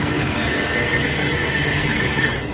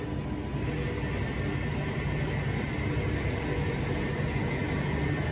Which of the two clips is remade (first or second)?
first